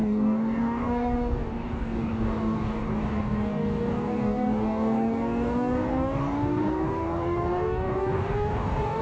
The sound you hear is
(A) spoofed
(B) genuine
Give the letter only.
A